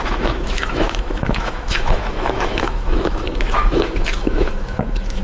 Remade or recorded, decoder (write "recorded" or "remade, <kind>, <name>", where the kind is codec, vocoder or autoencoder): remade, autoencoder, DAC-VAE